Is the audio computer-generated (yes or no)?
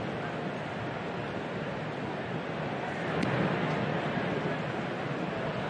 no